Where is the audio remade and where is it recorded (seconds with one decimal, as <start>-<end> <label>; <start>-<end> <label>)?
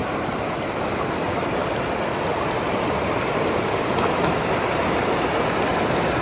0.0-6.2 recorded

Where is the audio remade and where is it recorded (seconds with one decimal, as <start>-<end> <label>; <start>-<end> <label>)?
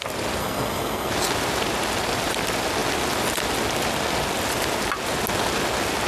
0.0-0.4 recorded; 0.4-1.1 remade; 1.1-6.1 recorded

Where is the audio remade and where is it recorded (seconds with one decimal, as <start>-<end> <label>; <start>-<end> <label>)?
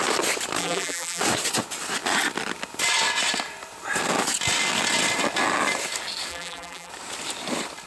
0.0-0.6 recorded; 0.6-1.2 remade; 1.2-6.3 recorded; 6.3-6.9 remade; 6.9-7.9 recorded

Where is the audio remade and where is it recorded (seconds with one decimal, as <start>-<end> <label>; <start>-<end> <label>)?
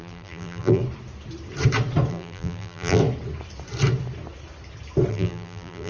0.0-0.8 remade; 0.8-2.1 recorded; 2.1-3.0 remade; 3.0-5.1 recorded; 5.1-5.9 remade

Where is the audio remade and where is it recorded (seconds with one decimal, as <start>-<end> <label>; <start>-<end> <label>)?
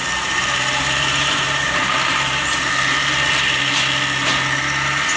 0.0-2.7 remade; 2.7-5.2 recorded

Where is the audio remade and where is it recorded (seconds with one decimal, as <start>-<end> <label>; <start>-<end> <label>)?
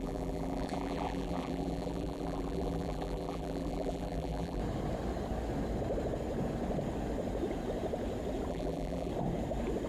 0.0-4.6 remade; 4.6-8.5 recorded; 8.5-9.1 remade; 9.1-9.9 recorded